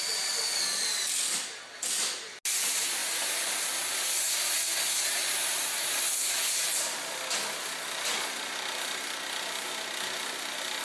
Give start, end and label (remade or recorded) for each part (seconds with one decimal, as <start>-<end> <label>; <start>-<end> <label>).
0.0-10.8 recorded